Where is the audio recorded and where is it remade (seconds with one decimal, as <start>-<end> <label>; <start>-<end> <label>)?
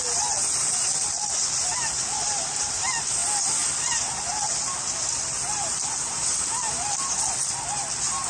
0.0-8.3 recorded